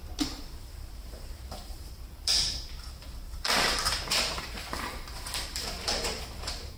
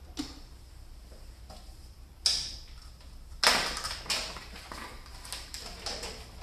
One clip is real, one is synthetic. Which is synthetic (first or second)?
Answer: first